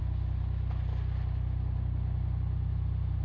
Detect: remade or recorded recorded